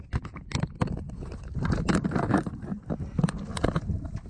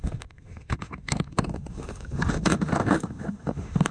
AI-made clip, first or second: second